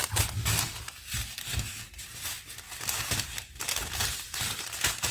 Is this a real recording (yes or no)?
yes